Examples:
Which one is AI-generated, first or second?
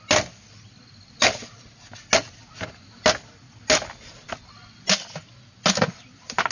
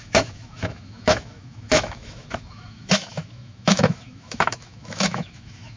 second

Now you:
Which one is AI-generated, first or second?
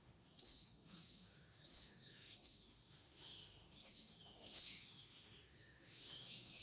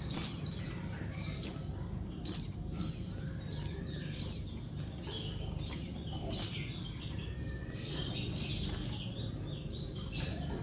first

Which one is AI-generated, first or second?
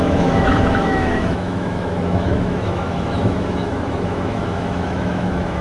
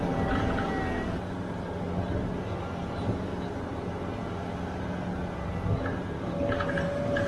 first